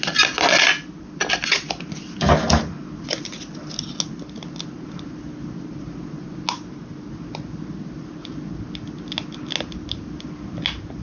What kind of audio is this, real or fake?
real